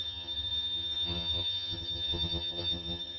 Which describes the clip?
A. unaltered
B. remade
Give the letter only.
B